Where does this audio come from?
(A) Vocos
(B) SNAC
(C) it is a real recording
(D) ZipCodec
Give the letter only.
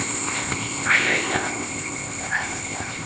D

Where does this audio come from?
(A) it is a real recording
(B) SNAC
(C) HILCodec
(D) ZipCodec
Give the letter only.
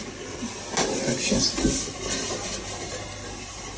A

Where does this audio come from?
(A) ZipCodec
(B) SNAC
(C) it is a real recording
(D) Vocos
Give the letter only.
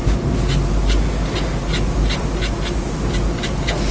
C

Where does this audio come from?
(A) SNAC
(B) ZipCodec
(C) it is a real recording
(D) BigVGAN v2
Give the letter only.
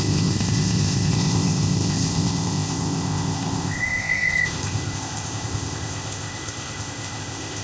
B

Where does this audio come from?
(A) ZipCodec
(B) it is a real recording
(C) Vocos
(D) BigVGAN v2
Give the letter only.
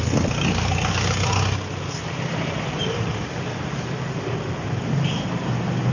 B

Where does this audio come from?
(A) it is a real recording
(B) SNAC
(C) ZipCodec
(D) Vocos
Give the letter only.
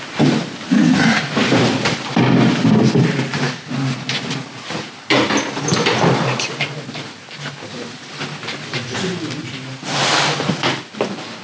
A